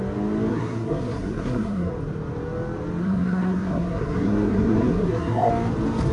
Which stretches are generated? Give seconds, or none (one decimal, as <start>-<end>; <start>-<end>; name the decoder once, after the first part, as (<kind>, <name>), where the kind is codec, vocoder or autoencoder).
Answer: 0.5-1.9 (codec, SNAC); 3.0-5.5